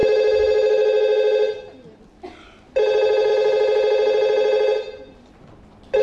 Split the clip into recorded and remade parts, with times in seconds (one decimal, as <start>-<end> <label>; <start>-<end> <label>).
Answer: 0.0-6.0 recorded